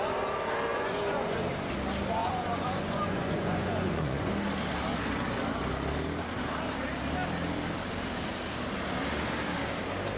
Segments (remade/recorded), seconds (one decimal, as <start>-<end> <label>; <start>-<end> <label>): 0.0-0.7 recorded; 0.7-1.4 remade; 1.4-2.2 recorded; 2.2-4.3 remade; 4.3-10.2 recorded